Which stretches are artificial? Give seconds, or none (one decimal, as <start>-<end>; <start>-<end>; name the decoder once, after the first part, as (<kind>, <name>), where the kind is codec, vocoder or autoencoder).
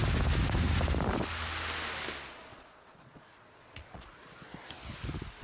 2.3-4.1 (vocoder, Vocos)